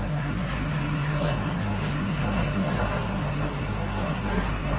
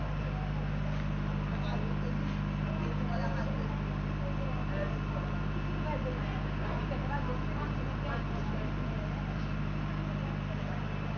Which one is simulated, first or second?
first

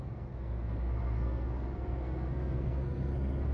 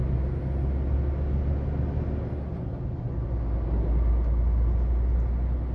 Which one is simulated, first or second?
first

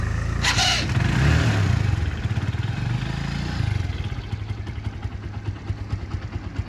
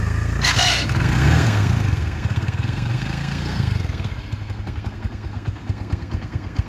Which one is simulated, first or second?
second